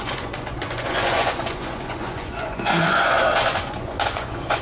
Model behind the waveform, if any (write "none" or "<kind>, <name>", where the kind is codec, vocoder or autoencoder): vocoder, Vocos